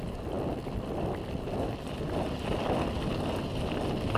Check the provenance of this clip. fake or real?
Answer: real